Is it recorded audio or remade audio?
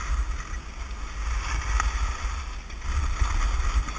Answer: recorded